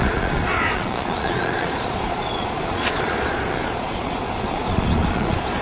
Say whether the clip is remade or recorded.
remade